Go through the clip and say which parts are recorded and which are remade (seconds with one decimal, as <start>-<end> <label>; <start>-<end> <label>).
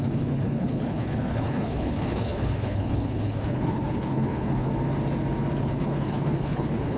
0.0-4.7 remade; 4.7-5.6 recorded; 5.6-7.0 remade